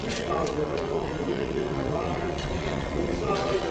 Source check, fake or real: fake